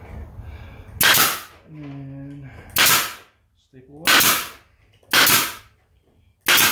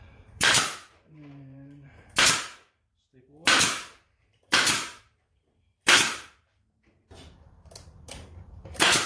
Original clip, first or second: first